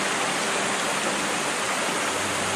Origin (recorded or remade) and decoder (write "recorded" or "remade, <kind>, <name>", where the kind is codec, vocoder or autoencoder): recorded